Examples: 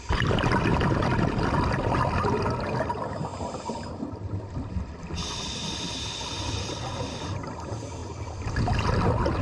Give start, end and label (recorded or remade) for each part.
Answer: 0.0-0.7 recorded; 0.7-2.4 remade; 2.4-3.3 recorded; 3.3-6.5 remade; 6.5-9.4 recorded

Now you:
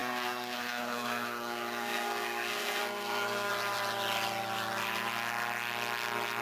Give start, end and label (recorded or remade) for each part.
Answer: 0.0-3.5 remade; 3.5-6.4 recorded

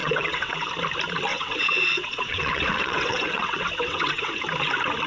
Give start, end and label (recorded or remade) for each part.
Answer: 0.0-0.7 remade; 0.7-1.3 recorded; 1.3-4.4 remade; 4.4-5.1 recorded

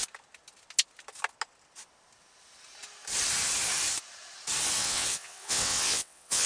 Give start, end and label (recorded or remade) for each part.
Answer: 0.0-4.8 recorded; 4.8-6.5 remade

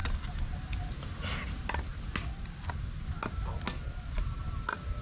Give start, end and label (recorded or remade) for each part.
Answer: 0.0-0.8 remade; 0.8-5.0 recorded